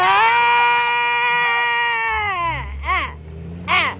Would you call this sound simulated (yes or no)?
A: no